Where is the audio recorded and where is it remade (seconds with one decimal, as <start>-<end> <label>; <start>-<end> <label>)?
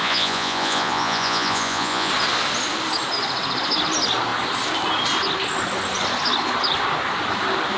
0.0-2.1 remade; 2.1-7.8 recorded